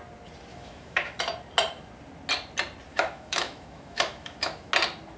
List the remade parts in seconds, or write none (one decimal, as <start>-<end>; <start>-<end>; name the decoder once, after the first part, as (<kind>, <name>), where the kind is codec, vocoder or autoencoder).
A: 0.5-1.2 (autoencoder, DAC-VAE); 2.9-4.7